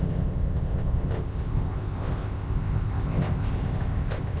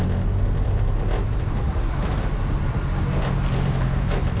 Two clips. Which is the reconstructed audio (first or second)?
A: first